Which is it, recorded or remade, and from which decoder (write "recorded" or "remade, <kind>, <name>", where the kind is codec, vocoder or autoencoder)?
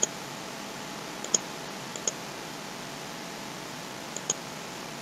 recorded